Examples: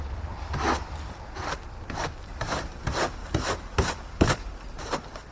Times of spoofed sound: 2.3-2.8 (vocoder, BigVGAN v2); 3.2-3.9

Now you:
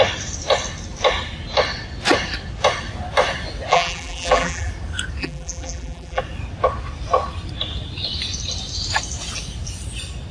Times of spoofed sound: 3.7-4.7 (vocoder, BigVGAN v2); 5.2-6.2